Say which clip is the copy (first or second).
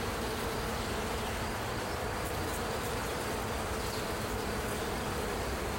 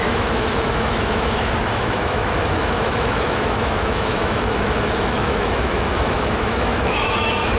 second